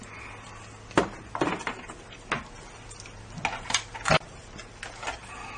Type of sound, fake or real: real